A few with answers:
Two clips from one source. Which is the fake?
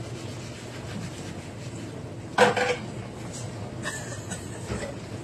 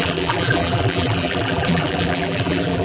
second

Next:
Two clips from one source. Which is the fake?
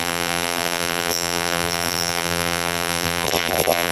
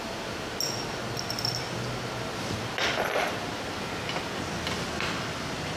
first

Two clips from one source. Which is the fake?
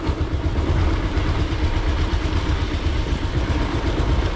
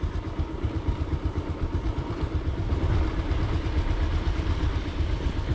second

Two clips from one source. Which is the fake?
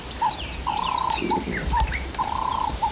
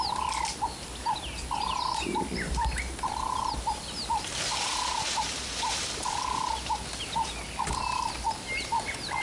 first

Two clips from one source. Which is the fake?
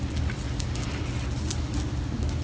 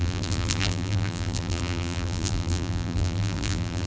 second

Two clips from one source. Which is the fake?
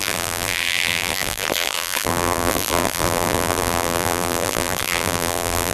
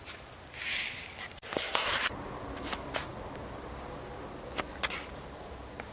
first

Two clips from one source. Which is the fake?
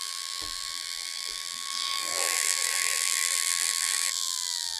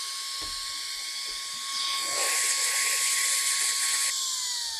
first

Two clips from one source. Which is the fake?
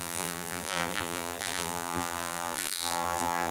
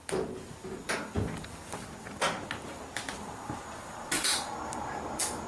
first